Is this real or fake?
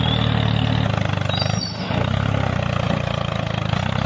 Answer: real